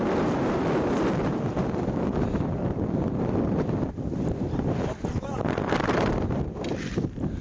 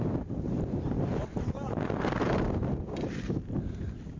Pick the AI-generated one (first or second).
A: first